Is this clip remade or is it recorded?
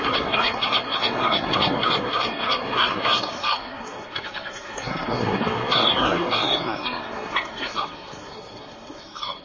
remade